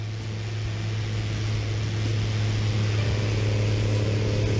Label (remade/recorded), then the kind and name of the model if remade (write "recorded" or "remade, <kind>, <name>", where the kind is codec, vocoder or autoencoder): recorded